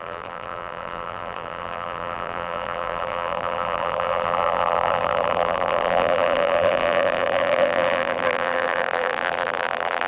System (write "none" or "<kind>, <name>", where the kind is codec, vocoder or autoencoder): vocoder, BigVGAN v2